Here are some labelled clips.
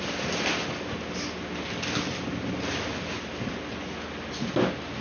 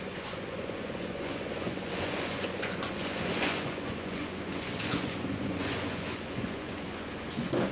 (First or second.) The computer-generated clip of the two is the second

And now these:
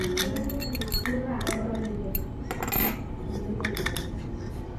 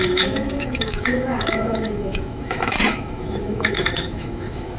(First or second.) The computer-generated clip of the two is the second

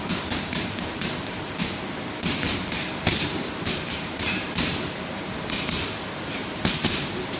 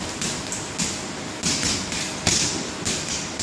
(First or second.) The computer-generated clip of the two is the first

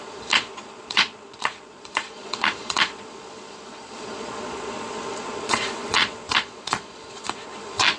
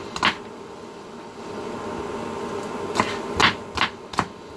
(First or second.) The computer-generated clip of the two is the first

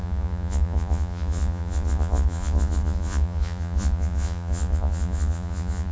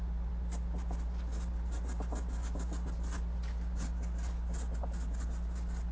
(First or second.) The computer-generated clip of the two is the first